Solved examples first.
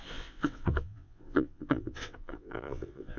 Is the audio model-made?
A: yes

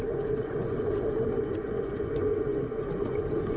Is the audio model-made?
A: yes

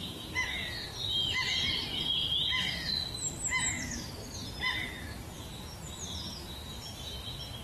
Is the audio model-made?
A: no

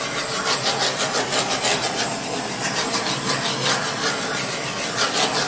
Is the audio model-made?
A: no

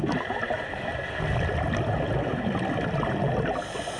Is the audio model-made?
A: no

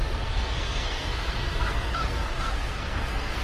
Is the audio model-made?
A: yes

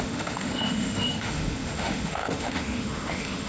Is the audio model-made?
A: yes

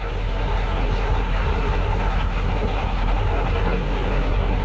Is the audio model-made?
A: yes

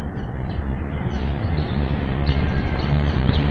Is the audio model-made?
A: yes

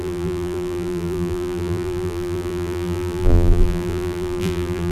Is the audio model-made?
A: yes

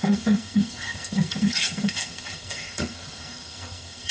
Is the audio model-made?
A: yes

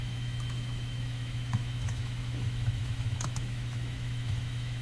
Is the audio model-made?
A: yes